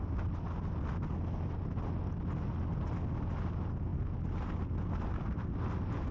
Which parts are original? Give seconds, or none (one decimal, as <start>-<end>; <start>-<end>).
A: 0.0-6.1